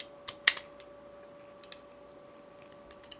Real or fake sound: real